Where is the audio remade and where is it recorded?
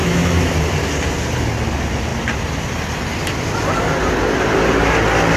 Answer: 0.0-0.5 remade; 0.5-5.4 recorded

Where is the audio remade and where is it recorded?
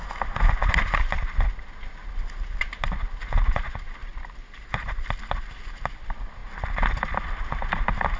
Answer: 0.0-8.2 recorded